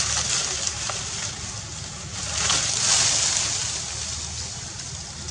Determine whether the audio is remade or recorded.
recorded